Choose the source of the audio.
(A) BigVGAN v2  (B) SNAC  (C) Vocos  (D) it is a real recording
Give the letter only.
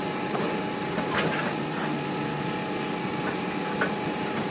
D